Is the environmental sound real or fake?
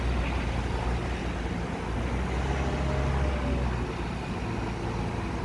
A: real